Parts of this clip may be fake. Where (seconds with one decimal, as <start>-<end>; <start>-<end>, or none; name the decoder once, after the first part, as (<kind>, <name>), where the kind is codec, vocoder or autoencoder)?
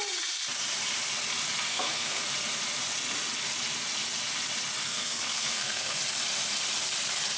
1.7-2.2 (codec, SNAC); 4.8-6.0